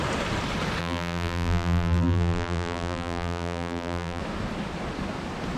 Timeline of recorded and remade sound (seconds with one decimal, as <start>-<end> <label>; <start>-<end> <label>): 0.0-0.8 recorded; 0.8-4.2 remade; 4.2-5.6 recorded